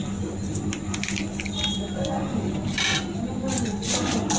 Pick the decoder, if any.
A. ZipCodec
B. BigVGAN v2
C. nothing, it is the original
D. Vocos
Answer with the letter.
C